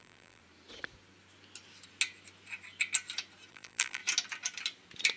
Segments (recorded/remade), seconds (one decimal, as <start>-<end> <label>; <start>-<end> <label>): 0.0-0.4 remade; 0.4-3.5 recorded; 3.5-4.0 remade; 4.0-5.2 recorded